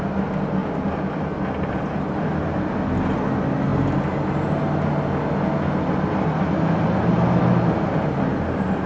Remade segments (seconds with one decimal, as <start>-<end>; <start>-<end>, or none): none

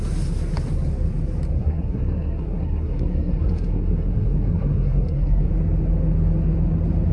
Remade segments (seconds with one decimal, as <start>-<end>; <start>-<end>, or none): 1.5-5.5

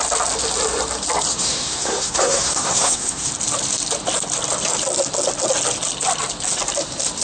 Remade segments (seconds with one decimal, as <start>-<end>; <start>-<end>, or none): 1.3-3.3

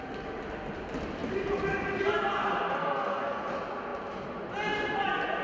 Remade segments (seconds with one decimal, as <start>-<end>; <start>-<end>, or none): 2.8-3.4

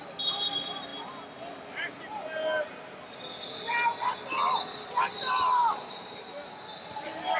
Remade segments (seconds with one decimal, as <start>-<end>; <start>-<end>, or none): 5.6-6.5